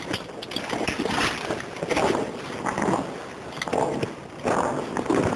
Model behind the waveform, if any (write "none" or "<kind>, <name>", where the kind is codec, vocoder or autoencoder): none